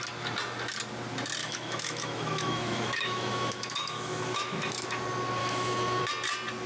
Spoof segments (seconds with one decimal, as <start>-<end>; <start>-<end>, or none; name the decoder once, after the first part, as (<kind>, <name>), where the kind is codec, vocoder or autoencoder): 1.4-5.0 (autoencoder, DAC-VAE); 5.4-6.0